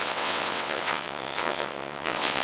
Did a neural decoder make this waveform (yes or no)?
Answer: yes